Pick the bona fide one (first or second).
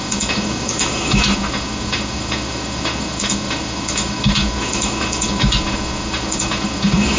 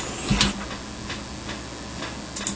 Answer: second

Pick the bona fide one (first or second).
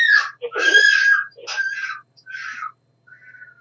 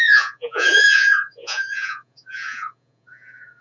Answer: first